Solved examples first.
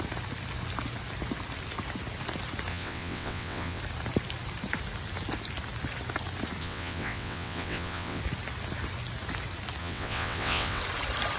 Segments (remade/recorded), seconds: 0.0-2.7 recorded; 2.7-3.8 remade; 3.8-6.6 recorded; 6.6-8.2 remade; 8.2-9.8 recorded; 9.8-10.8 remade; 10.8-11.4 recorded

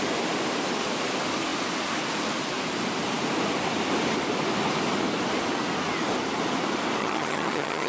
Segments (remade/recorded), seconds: 0.0-7.0 recorded; 7.0-7.9 remade

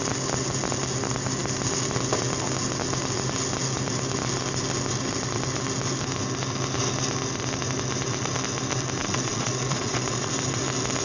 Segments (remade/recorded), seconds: 0.0-9.0 recorded; 9.0-10.3 remade; 10.3-11.0 recorded

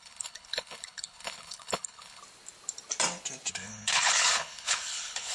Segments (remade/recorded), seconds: 0.0-2.2 remade; 2.2-3.5 recorded; 3.5-5.3 remade

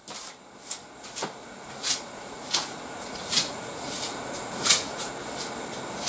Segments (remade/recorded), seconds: 0.0-1.4 recorded; 1.4-5.1 remade; 5.1-6.1 recorded

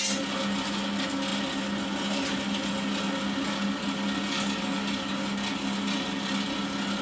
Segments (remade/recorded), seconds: 0.0-7.0 recorded